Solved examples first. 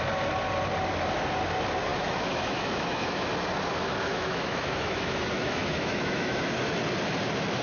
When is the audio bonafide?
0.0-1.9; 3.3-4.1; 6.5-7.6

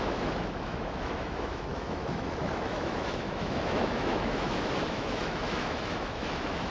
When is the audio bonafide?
none

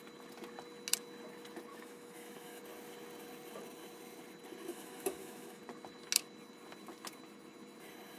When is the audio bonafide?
0.0-1.7; 2.6-4.7; 5.6-8.2

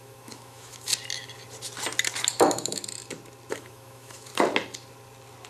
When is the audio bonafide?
0.9-2.4; 2.8-3.5; 4.3-5.5

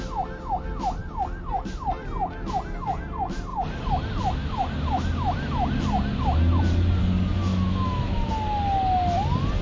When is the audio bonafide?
0.0-7.5; 8.3-9.6

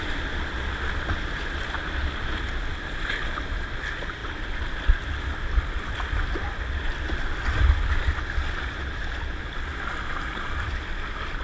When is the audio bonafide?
0.0-11.4

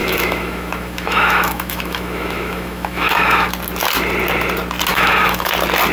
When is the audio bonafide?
3.5-4.9; 5.5-5.9